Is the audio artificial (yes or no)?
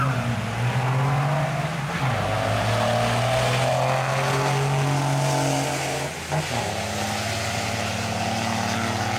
no